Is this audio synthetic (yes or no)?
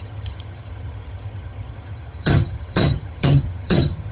yes